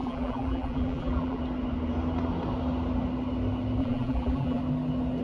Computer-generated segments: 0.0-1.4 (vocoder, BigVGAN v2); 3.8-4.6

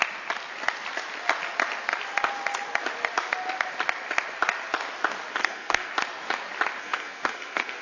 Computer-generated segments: 5.4-5.9 (codec, SNAC); 6.8-7.8

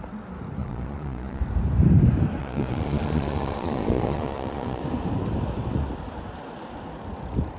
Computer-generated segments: 0.6-1.4 (vocoder, Vocos); 2.4-4.8

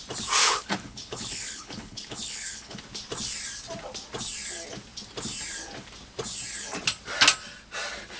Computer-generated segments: 0.4-2.8 (codec, HILCodec)

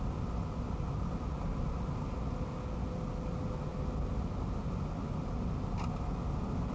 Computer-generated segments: none

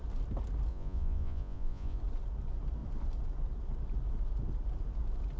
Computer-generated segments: 0.7-2.0 (vocoder, Vocos)

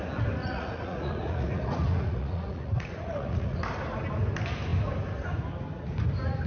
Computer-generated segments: 0.4-3.6 (vocoder, Vocos)

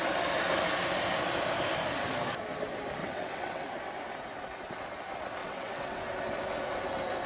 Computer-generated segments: 3.0-3.7 (vocoder, WaveNeXt); 5.4-6.0